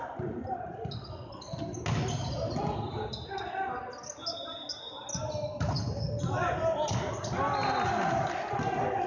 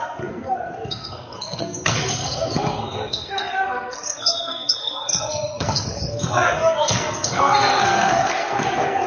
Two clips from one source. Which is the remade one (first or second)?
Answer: second